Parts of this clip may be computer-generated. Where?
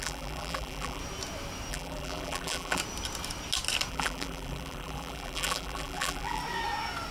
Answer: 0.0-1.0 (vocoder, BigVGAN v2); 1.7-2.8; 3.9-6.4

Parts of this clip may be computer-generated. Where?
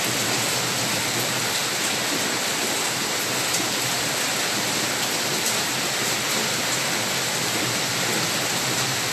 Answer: 0.0-1.6 (vocoder, BigVGAN v2); 3.5-9.1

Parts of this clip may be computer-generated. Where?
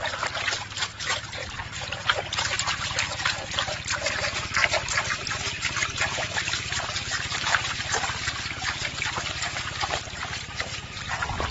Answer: 0.0-4.6 (vocoder, BigVGAN v2); 5.2-11.5